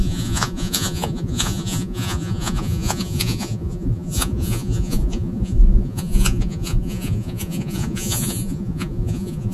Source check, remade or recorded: remade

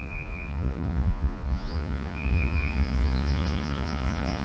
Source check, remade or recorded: remade